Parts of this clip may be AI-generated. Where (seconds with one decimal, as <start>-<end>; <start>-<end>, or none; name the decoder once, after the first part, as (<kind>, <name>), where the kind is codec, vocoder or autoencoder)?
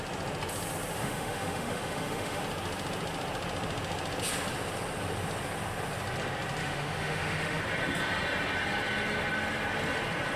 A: 1.0-2.4 (autoencoder, DAC-VAE); 6.6-7.6